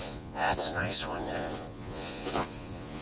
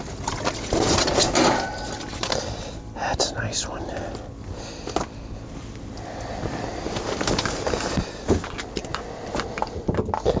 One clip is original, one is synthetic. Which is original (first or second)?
second